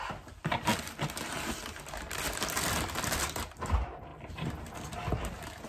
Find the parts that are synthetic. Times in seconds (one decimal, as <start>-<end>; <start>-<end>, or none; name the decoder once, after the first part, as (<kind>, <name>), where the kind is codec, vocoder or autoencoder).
0.0-5.7 (vocoder, BigVGAN v2)